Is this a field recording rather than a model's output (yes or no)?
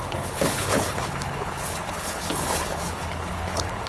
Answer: no